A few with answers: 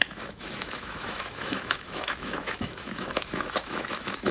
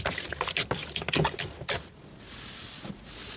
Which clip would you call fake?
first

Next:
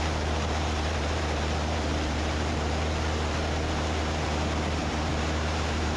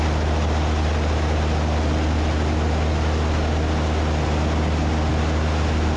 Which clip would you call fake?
first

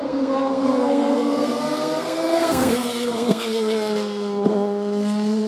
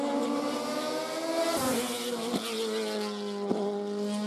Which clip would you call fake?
first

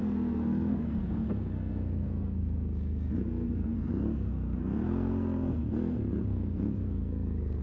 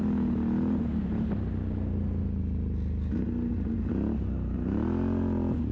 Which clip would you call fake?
first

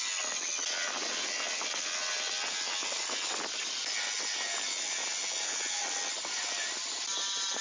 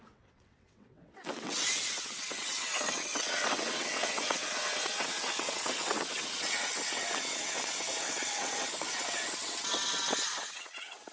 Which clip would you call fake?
second